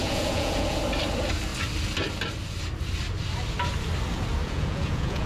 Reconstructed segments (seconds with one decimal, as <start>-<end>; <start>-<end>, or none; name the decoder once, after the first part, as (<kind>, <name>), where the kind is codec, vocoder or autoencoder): 0.0-0.8 (vocoder, Vocos); 4.4-5.3